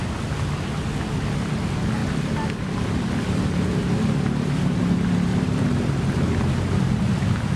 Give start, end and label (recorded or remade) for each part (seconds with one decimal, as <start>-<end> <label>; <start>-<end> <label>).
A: 0.0-2.0 recorded; 2.0-4.6 remade; 4.6-5.3 recorded; 5.3-7.6 remade